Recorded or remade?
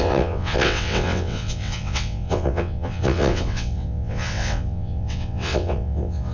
remade